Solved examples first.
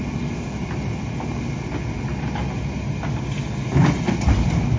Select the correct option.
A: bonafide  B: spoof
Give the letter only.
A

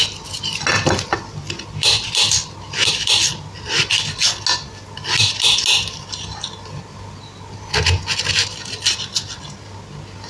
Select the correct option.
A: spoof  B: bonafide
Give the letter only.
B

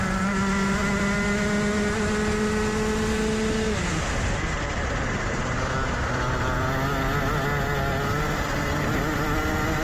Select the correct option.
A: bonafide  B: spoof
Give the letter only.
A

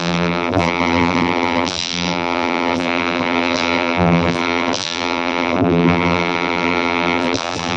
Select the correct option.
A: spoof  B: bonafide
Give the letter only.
A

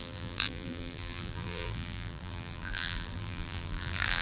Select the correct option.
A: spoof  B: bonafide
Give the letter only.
A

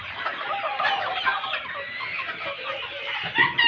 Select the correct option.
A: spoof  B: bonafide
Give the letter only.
B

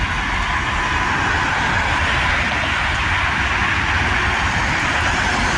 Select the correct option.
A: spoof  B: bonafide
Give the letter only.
B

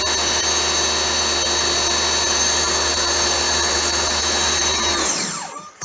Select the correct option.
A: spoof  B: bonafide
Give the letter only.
B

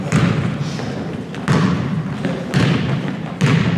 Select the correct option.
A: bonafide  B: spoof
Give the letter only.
A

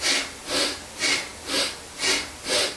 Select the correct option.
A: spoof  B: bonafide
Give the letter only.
B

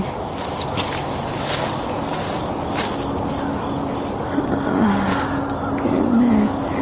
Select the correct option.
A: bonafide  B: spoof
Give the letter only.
A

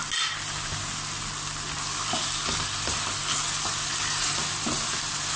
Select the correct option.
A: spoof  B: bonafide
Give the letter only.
B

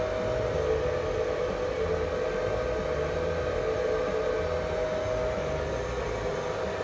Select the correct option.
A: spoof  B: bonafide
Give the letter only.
B